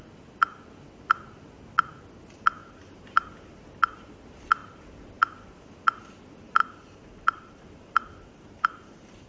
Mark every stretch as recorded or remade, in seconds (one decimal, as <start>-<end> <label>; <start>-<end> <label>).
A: 0.0-2.6 recorded; 2.6-3.3 remade; 3.3-6.6 recorded; 6.6-9.3 remade